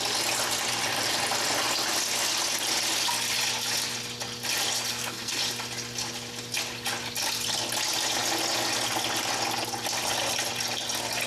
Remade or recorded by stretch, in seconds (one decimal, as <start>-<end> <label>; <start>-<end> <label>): 0.0-4.9 recorded; 4.9-5.4 remade; 5.4-11.3 recorded